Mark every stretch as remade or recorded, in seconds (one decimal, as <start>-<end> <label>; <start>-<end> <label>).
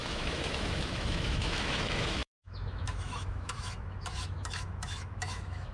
0.0-5.7 remade